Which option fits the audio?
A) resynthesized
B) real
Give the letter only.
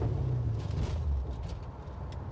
B